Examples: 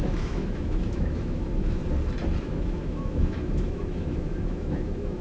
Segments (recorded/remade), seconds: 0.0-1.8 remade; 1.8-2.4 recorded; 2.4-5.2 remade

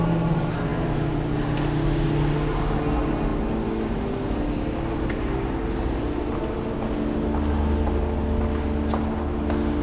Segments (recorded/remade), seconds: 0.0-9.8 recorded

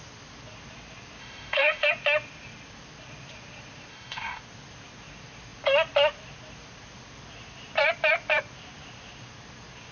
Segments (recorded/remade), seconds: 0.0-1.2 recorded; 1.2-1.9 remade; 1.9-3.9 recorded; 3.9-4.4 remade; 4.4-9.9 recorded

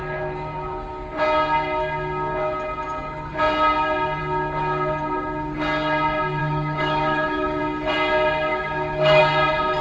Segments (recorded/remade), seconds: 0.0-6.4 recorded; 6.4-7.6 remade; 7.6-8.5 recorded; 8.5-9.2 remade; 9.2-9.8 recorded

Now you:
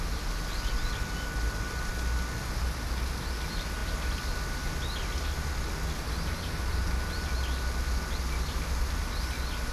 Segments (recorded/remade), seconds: 0.0-9.7 recorded

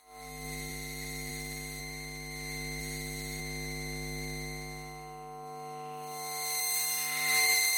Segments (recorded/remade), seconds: 0.0-1.8 remade; 1.8-2.8 recorded; 2.8-3.4 remade; 3.4-6.6 recorded; 6.6-7.8 remade

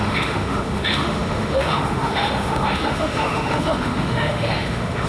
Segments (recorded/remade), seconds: 0.0-5.1 remade